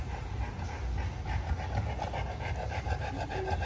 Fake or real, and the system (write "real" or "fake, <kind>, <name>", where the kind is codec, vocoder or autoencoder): real